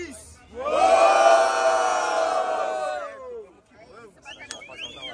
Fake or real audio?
real